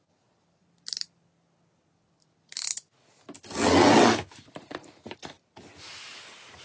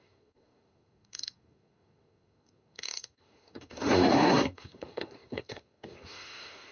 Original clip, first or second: first